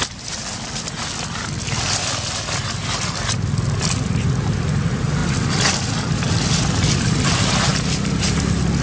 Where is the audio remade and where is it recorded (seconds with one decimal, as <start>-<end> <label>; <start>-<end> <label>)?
0.0-8.8 recorded